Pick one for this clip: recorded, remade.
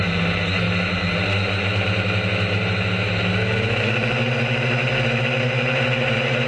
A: recorded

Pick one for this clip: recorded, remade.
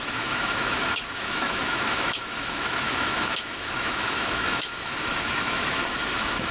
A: remade